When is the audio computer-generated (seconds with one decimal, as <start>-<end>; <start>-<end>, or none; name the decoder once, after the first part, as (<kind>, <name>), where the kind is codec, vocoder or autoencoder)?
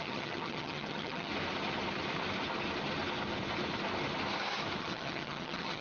0.0-1.3 (vocoder, HiFi-GAN); 4.8-5.8